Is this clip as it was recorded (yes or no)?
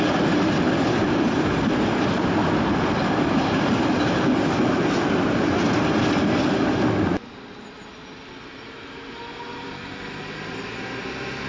yes